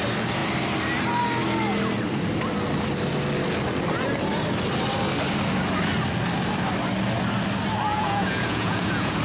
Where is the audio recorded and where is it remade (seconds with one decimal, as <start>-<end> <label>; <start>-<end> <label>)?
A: 0.0-7.9 recorded; 7.9-9.2 remade